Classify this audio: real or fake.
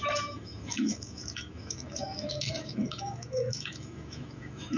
fake